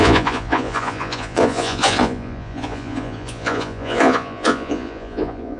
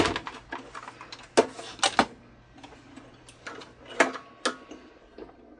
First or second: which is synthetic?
first